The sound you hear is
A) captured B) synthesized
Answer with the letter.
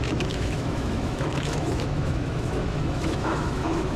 B